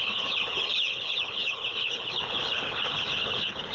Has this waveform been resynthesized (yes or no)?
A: yes